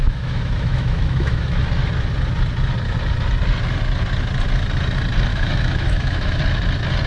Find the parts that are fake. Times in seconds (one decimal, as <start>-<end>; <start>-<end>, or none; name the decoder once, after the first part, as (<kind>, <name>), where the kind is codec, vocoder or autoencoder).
0.0-1.6 (autoencoder, DAC-VAE); 5.3-6.4